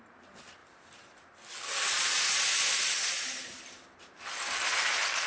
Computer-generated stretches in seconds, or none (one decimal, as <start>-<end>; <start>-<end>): none